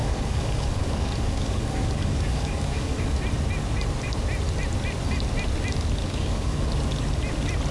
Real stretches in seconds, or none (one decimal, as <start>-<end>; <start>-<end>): 3.2-6.0; 6.7-7.7